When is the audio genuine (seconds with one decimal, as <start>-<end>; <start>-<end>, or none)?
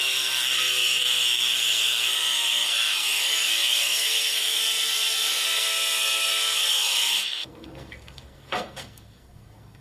none